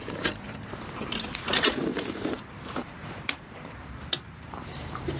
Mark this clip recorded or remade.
remade